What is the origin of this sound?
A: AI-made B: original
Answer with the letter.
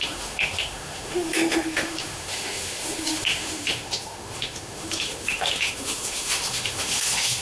A